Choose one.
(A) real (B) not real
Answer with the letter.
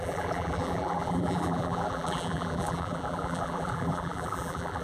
B